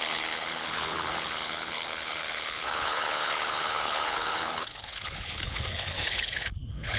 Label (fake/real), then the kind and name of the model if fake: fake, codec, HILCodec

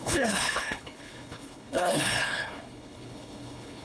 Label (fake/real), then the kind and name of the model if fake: fake, codec, HILCodec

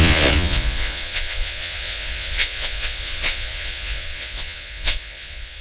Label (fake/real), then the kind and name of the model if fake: fake, vocoder, Vocos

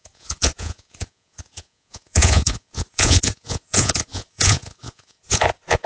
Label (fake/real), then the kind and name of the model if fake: fake, vocoder, Vocos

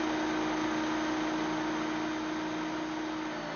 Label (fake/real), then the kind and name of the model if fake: real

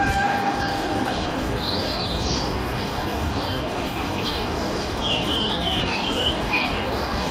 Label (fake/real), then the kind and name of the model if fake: fake, codec, DAC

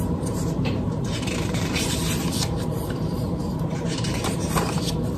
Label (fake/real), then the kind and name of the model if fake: fake, vocoder, BigVGAN v2